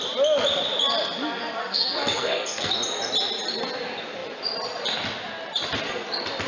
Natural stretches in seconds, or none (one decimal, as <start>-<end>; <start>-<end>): 0.0-1.6; 2.7-6.5